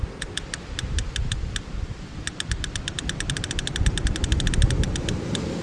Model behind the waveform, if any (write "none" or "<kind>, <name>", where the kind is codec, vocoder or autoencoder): none